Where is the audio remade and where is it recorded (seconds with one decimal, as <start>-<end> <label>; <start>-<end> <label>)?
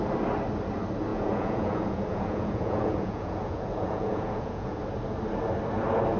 0.0-1.1 recorded; 1.1-4.8 remade; 4.8-6.2 recorded